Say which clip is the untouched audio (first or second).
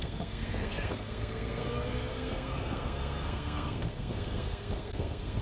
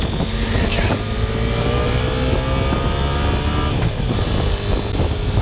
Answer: second